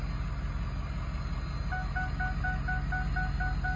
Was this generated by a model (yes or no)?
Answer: no